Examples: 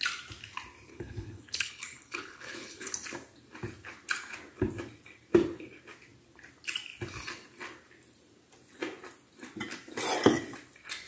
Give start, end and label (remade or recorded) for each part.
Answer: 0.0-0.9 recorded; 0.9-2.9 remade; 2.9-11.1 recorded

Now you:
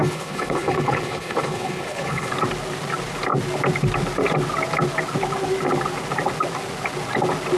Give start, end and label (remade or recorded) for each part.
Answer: 0.0-2.3 remade; 2.3-7.6 recorded

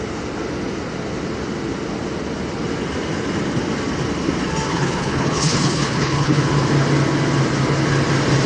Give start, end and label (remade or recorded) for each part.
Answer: 0.0-4.7 recorded; 4.7-6.4 remade; 6.4-8.5 recorded

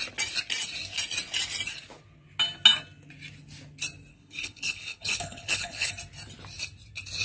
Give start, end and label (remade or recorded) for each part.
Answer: 0.0-4.1 recorded; 4.1-5.9 remade; 5.9-7.2 recorded

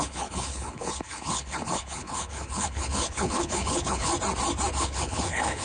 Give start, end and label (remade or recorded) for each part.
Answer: 0.0-4.1 remade; 4.1-4.8 recorded; 4.8-5.6 remade